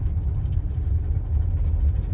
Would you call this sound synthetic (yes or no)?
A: no